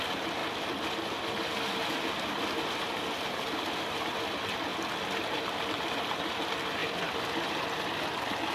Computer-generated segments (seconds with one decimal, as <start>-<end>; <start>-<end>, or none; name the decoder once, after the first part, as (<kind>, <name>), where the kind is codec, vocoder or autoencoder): 0.4-1.5 (vocoder, BigVGAN v2); 6.8-7.6